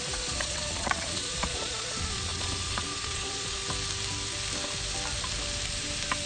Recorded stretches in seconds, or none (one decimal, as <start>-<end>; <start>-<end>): 3.6-6.3

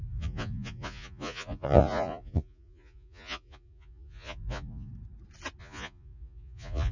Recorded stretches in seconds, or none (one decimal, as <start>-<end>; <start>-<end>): 4.9-5.6

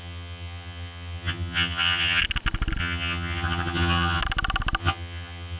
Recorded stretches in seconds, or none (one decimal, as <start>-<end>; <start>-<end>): 2.2-2.8; 4.2-4.8